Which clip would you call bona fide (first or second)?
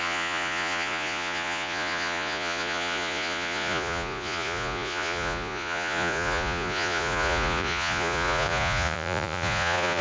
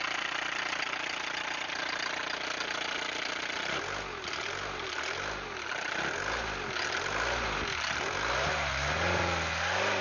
second